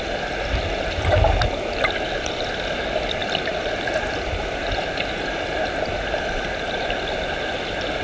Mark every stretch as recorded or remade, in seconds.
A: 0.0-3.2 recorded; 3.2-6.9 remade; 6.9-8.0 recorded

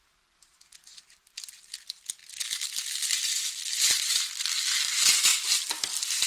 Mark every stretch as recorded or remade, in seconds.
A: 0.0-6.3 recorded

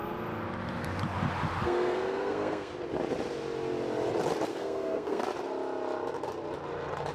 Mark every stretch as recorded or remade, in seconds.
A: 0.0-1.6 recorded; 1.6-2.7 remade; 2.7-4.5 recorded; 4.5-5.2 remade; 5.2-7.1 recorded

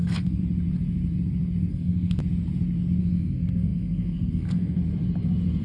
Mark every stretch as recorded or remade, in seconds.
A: 0.0-0.4 remade; 0.4-1.7 recorded; 1.7-2.2 remade; 2.2-3.0 recorded; 3.0-4.8 remade; 4.8-5.6 recorded

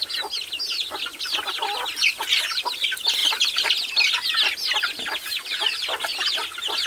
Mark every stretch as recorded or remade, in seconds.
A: 0.0-6.9 recorded